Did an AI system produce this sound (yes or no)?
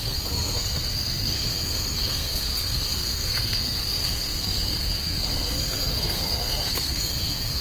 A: yes